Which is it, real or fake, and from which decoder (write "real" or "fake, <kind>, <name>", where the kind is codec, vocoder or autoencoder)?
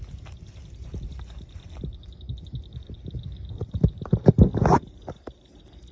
real